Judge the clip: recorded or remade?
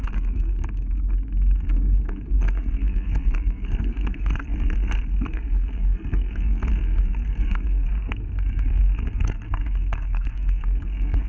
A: remade